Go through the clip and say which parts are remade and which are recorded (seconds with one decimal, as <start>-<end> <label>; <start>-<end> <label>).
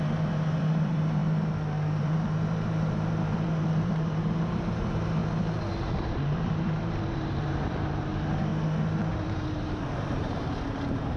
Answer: 0.0-1.2 remade; 1.2-2.0 recorded; 2.0-5.2 remade; 5.2-5.8 recorded; 5.8-8.5 remade; 8.5-9.1 recorded; 9.1-11.2 remade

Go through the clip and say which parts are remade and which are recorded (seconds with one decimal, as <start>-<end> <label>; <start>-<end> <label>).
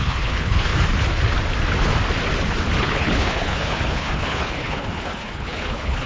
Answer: 0.0-0.7 remade; 0.7-2.8 recorded; 2.8-6.1 remade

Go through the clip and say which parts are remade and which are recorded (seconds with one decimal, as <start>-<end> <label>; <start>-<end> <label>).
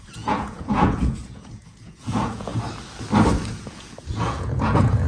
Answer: 0.0-2.5 remade; 2.5-3.5 recorded; 3.5-5.1 remade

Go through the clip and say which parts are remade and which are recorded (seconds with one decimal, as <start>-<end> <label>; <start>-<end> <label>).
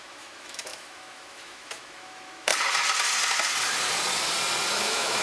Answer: 0.0-2.5 remade; 2.5-4.7 recorded; 4.7-5.2 remade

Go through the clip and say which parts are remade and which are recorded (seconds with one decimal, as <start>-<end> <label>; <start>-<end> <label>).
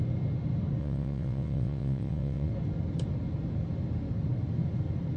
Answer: 0.0-0.8 recorded; 0.8-2.5 remade; 2.5-5.2 recorded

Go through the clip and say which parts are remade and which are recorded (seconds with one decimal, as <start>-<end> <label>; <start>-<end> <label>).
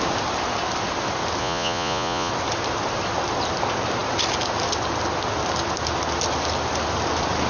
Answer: 0.0-1.4 recorded; 1.4-2.3 remade; 2.3-7.5 recorded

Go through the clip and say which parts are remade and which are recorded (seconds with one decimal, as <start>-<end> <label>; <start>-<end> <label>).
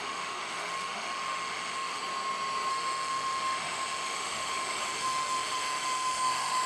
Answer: 0.0-2.0 remade; 2.0-2.7 recorded; 2.7-6.7 remade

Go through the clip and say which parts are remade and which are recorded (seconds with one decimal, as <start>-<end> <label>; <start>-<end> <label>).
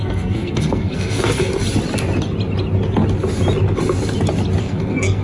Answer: 0.0-1.5 remade; 1.5-4.6 recorded; 4.6-5.2 remade